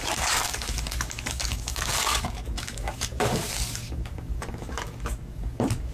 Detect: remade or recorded remade